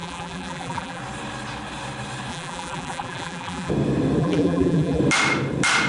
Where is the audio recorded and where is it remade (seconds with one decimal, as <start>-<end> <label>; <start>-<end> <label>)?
0.0-1.0 remade; 1.0-2.3 recorded; 2.3-3.7 remade; 3.7-4.2 recorded; 4.2-5.0 remade; 5.0-5.9 recorded